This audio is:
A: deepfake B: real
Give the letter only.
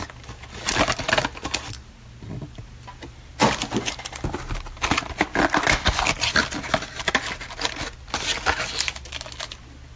B